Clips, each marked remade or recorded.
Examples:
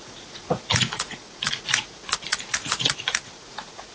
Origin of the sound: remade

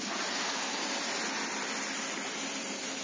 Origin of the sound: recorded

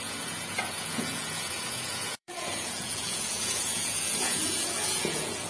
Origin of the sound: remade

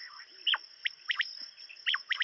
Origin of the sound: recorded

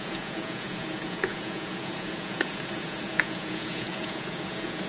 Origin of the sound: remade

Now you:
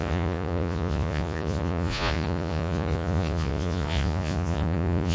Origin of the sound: remade